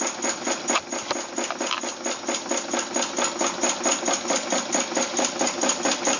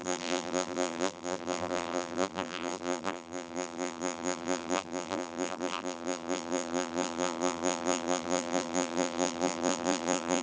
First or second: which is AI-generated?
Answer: second